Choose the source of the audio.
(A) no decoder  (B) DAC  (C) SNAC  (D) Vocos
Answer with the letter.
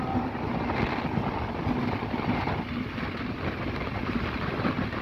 A